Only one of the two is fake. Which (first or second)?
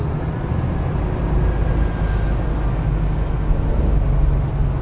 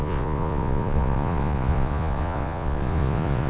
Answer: second